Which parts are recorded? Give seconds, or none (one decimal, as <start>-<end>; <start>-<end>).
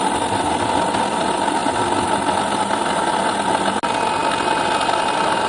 0.0-5.5